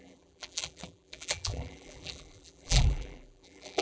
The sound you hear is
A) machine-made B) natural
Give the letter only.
A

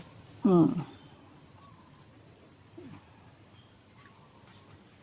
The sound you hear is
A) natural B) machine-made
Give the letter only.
B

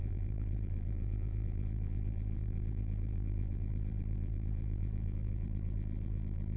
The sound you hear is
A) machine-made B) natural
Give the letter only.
A